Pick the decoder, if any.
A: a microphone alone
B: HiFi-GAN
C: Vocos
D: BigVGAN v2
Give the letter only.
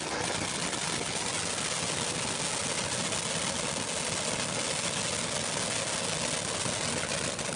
A